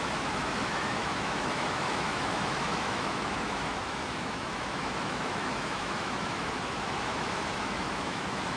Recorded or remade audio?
remade